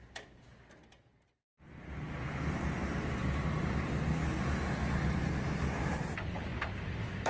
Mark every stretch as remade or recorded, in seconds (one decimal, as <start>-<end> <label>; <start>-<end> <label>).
0.0-7.3 recorded